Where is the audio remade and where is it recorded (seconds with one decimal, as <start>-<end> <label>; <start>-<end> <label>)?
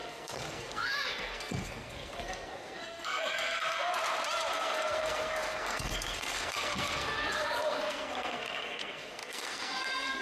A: 0.0-3.9 remade; 3.9-4.5 recorded; 4.5-10.2 remade